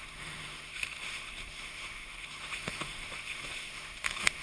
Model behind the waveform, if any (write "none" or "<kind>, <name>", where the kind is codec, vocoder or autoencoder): autoencoder, DAC-VAE